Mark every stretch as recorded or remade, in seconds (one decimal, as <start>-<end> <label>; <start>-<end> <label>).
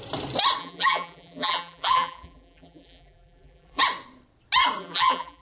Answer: 0.0-0.6 recorded; 0.6-3.8 remade; 3.8-4.8 recorded; 4.8-5.4 remade